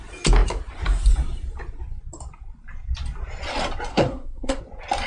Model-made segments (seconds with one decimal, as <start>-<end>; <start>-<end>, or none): 3.9-4.6